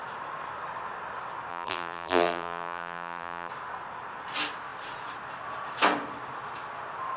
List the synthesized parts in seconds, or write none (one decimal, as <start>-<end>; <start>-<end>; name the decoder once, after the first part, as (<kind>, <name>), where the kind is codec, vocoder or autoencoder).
1.5-3.5 (vocoder, BigVGAN v2)